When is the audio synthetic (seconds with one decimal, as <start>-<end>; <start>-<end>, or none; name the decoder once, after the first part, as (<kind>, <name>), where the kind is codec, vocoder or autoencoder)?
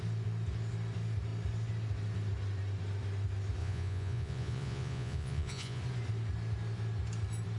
3.6-5.8 (vocoder, Vocos)